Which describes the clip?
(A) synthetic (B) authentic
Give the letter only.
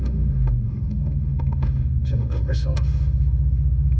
A